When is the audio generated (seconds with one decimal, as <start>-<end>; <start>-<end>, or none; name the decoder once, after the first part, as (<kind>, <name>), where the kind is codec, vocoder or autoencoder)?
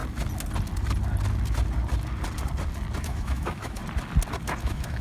3.0-3.8 (autoencoder, DAC-VAE); 4.6-5.0